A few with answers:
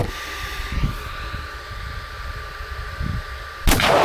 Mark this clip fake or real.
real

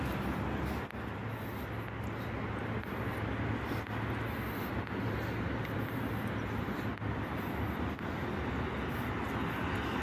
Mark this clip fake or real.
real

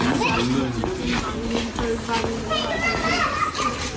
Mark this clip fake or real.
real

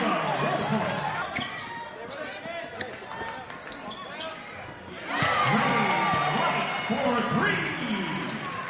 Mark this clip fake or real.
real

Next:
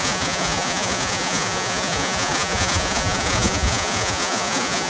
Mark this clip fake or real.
fake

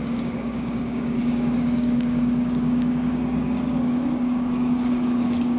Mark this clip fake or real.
fake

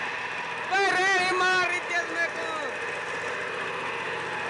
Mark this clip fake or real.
real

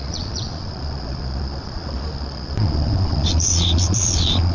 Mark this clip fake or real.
fake